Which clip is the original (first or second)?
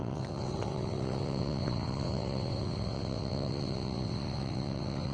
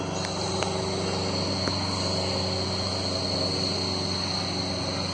second